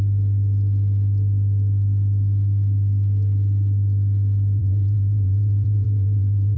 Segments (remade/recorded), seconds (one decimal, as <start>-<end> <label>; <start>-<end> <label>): 0.0-4.6 recorded; 4.6-6.6 remade